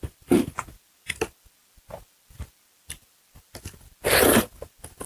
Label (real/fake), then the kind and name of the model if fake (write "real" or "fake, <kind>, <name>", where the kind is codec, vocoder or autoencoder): real